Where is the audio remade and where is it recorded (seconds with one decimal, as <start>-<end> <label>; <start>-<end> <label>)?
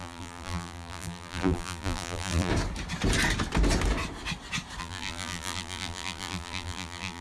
0.0-2.5 remade; 2.5-4.8 recorded; 4.8-7.2 remade